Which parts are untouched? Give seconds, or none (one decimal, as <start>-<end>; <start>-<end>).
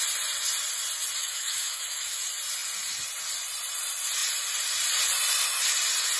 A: 0.0-1.2; 2.2-6.2